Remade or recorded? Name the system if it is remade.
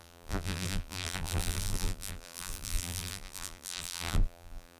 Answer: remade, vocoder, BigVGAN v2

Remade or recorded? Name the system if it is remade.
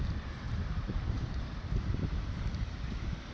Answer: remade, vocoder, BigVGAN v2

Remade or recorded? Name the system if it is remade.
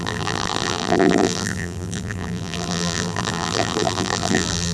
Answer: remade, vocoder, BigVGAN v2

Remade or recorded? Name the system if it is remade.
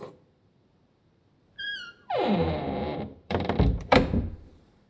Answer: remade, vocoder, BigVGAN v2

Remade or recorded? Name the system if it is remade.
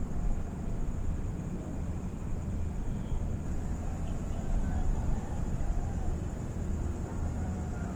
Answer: remade, vocoder, BigVGAN v2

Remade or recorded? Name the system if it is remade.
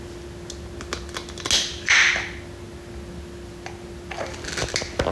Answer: recorded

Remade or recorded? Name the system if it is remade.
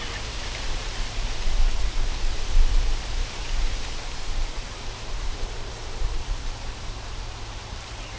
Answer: remade, vocoder, BigVGAN v2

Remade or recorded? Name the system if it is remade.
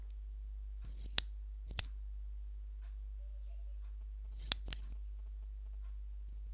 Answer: recorded